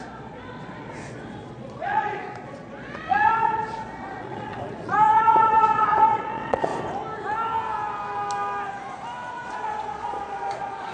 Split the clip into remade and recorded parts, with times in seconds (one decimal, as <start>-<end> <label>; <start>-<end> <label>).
0.0-6.7 remade; 6.7-9.3 recorded; 9.3-10.9 remade